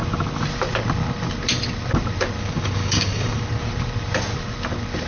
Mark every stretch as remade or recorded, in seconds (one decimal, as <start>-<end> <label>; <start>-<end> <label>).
0.0-2.4 recorded; 2.4-3.4 remade; 3.4-5.1 recorded